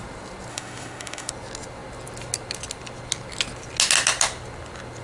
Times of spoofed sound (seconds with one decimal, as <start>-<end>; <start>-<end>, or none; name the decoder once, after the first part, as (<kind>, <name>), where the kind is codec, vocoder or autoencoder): 0.5-1.3 (autoencoder, DAC-VAE)